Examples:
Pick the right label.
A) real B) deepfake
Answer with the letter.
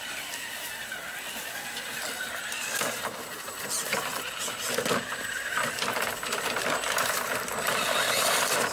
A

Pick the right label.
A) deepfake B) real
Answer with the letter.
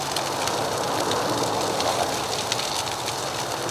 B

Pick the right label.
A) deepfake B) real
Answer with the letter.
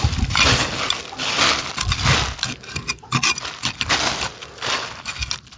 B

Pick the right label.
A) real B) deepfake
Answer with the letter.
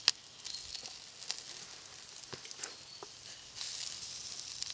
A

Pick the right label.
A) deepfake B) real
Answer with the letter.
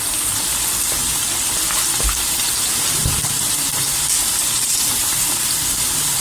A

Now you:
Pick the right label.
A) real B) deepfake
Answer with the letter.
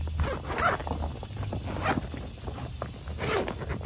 A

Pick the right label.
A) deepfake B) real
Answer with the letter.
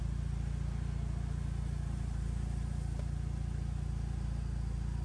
B